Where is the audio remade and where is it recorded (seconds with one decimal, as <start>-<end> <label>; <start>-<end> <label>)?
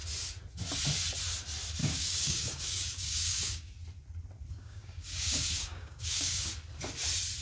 0.0-1.8 recorded; 1.8-3.7 remade; 3.7-4.5 recorded; 4.5-6.5 remade; 6.5-7.4 recorded